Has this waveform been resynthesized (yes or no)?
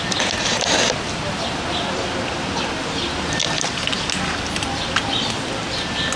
no